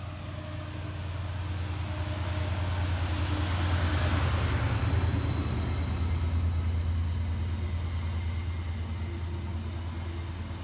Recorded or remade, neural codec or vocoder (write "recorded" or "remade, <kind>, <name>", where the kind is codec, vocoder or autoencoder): recorded